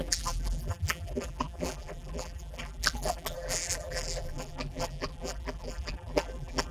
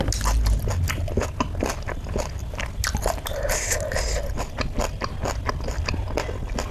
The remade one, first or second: first